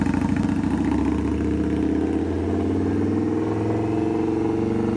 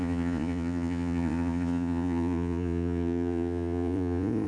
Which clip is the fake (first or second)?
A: second